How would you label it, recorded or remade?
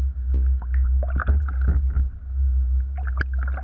recorded